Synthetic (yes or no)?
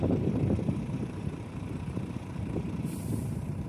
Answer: yes